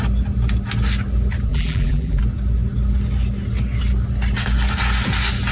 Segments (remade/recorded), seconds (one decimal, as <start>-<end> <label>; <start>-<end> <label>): 0.0-1.5 recorded; 1.5-2.2 remade; 2.2-5.5 recorded